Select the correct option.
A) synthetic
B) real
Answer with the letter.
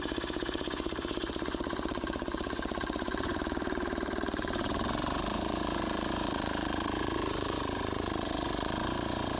A